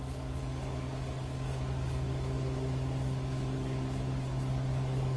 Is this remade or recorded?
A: remade